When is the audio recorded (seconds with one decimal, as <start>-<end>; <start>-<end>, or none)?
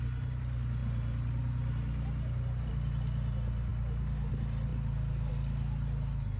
0.0-6.4